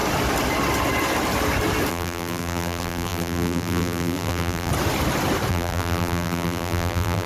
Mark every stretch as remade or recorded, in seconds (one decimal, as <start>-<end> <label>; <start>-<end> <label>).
0.0-1.9 recorded; 1.9-4.7 remade; 4.7-5.5 recorded; 5.5-7.3 remade